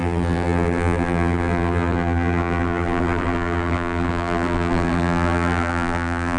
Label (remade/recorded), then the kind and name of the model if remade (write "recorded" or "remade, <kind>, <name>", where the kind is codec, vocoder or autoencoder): remade, vocoder, BigVGAN v2